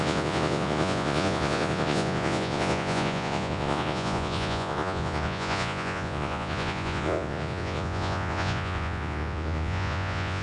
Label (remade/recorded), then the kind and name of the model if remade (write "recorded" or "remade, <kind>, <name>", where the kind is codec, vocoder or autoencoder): remade, vocoder, Vocos